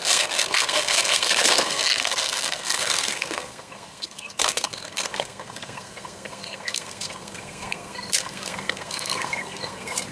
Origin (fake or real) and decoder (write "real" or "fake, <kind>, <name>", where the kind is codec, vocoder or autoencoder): fake, codec, SNAC